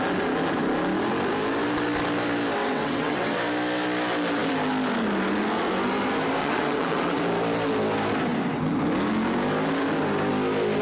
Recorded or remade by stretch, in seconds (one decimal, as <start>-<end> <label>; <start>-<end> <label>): 0.0-2.6 recorded; 2.6-3.4 remade; 3.4-6.4 recorded; 6.4-7.2 remade; 7.2-10.8 recorded